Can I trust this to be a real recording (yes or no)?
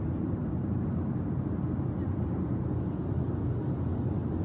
yes